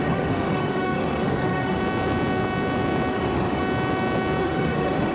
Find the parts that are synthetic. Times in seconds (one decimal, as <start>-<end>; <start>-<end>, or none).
0.0-1.8; 3.1-3.6; 4.4-5.1